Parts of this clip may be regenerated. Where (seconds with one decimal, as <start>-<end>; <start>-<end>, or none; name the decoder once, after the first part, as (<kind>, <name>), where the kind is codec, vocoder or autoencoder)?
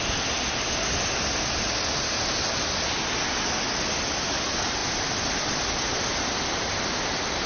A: none